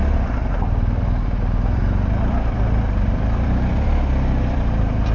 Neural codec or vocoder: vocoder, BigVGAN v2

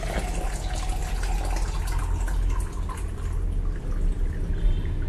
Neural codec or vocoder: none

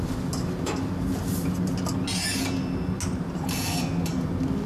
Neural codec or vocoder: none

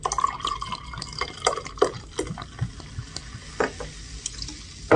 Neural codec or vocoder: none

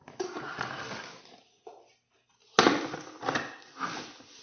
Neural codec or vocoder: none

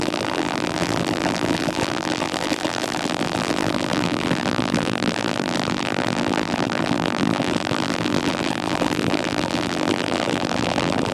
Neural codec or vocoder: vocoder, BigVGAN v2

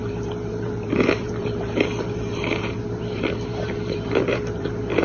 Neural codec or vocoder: vocoder, BigVGAN v2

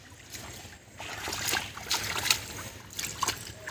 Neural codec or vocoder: none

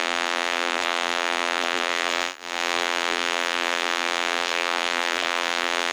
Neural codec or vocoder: vocoder, BigVGAN v2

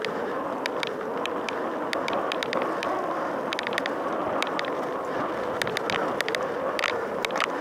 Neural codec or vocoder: none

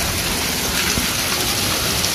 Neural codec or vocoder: none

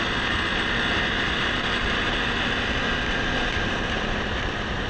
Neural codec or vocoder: none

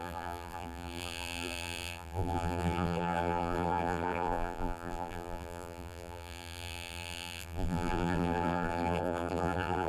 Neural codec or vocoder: vocoder, BigVGAN v2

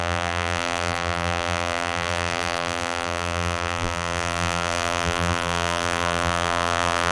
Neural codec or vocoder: vocoder, BigVGAN v2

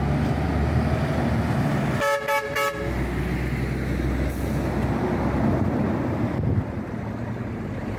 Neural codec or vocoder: none